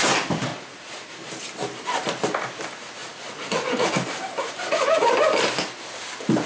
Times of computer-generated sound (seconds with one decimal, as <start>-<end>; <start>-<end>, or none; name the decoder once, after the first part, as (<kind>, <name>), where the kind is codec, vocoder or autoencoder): 0.5-1.1 (vocoder, Vocos); 3.0-3.9; 4.4-5.0

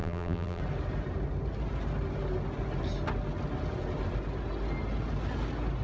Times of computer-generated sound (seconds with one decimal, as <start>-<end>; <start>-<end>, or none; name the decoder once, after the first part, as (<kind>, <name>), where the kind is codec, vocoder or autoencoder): 0.0-0.6 (vocoder, BigVGAN v2)

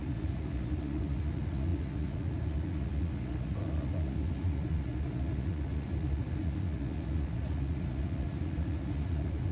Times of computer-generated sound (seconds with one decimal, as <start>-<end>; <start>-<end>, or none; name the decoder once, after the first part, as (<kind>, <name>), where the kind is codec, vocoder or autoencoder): 0.0-9.5 (vocoder, Vocos)

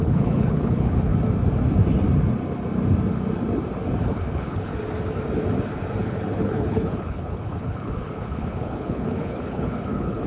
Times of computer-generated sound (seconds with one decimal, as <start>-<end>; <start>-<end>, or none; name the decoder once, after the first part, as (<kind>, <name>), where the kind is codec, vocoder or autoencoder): 0.0-1.1 (codec, HILCodec); 4.1-4.7; 6.0-10.3

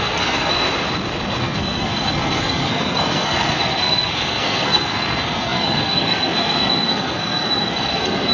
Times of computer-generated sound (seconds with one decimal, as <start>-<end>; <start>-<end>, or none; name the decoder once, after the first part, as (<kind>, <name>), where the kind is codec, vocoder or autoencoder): 0.0-0.5 (codec, SNAC); 1.4-8.3

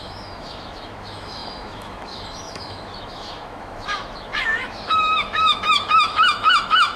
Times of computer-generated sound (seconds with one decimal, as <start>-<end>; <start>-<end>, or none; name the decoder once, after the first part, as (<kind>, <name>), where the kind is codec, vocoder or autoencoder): 0.0-7.0 (autoencoder, DAC-VAE)

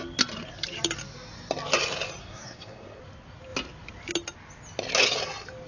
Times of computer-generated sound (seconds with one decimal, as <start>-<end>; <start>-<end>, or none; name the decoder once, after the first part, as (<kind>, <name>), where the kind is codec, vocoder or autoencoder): 2.2-3.0 (codec, SNAC)